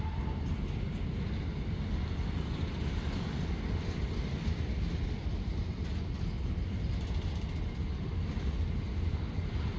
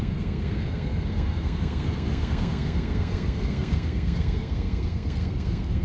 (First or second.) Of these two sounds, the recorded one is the first